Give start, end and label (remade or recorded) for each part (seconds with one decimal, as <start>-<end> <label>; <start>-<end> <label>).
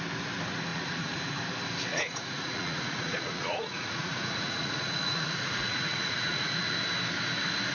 0.0-0.7 recorded; 0.7-1.2 remade; 1.2-1.9 recorded; 1.9-6.5 remade; 6.5-7.7 recorded